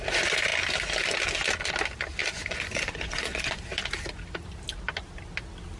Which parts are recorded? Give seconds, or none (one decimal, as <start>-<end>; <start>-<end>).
0.0-2.2; 3.6-5.8